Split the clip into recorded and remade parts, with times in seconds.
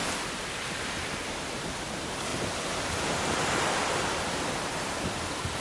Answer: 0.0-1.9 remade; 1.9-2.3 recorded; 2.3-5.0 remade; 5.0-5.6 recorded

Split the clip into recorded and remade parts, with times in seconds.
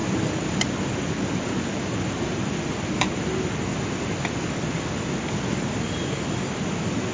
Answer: 0.0-0.6 remade; 0.6-3.7 recorded; 3.7-6.4 remade; 6.4-7.1 recorded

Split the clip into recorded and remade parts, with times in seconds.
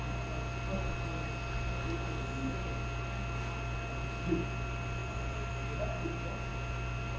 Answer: 0.0-5.0 recorded; 5.0-5.5 remade; 5.5-7.2 recorded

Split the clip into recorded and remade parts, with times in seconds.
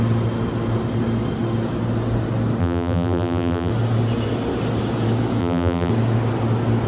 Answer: 0.0-2.6 recorded; 2.6-3.7 remade; 3.7-5.4 recorded; 5.4-5.9 remade; 5.9-6.9 recorded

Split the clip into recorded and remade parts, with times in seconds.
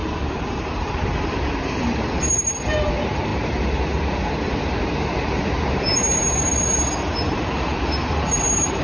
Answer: 0.0-8.8 remade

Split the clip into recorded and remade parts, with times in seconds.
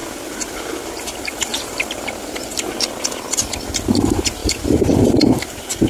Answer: 0.0-1.5 recorded; 1.5-2.7 remade; 2.7-4.4 recorded; 4.4-5.5 remade; 5.5-5.9 recorded